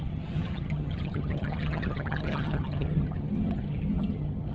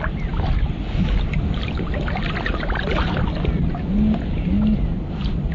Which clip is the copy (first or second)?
first